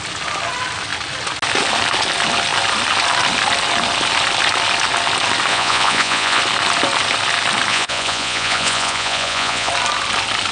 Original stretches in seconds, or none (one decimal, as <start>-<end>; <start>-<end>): 0.0-5.5; 6.4-7.7; 9.7-10.5